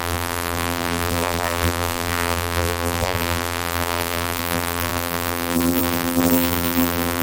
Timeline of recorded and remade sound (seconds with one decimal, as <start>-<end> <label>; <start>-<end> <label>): 0.0-7.2 remade